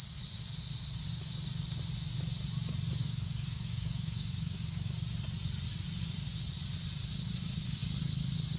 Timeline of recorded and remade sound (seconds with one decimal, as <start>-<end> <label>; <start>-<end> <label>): 0.0-3.0 recorded; 3.0-4.9 remade; 4.9-8.6 recorded